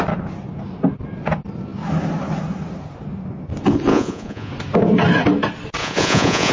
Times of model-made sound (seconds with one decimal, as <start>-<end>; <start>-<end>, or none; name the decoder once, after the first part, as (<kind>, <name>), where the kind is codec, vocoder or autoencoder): 3.9-4.5 (vocoder, Vocos); 5.8-6.5